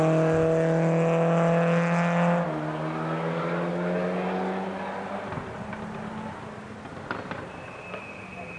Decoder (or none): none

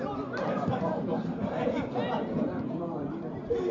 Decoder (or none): none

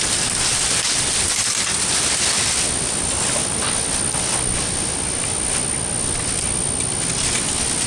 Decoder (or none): none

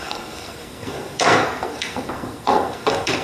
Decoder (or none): codec, SNAC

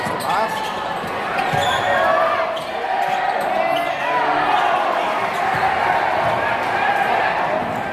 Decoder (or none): none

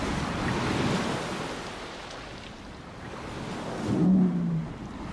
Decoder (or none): none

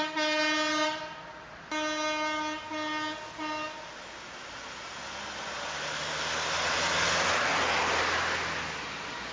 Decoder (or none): none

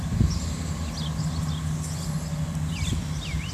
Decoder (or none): none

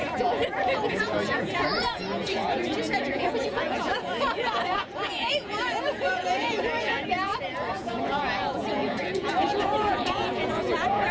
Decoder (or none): vocoder, Vocos